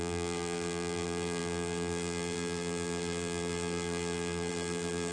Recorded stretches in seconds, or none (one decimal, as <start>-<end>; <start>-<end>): none